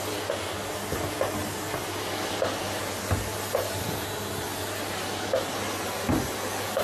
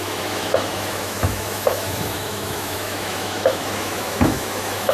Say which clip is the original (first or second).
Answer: first